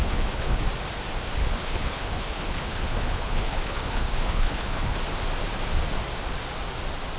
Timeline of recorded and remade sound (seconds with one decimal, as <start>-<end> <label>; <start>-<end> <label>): 0.0-0.6 remade; 0.6-1.4 recorded; 1.4-5.0 remade; 5.0-7.2 recorded